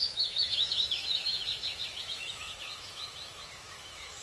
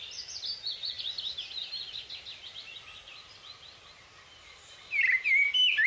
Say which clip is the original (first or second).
second